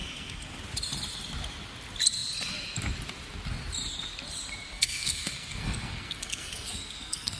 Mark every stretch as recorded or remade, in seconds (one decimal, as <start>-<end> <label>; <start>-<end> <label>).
0.0-0.6 remade; 0.6-4.7 recorded; 4.7-7.4 remade